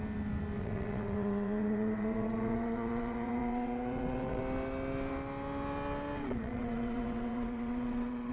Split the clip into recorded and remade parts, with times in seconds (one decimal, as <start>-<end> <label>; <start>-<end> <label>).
0.0-0.6 recorded; 0.6-4.4 remade; 4.4-6.2 recorded; 6.2-8.3 remade